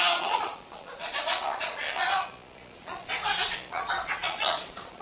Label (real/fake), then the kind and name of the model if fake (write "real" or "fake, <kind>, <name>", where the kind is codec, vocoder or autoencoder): fake, vocoder, Vocos